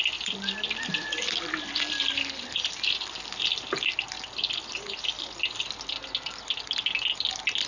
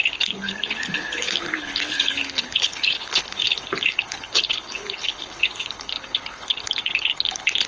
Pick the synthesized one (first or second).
second